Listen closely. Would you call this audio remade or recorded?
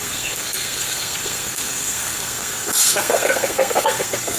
remade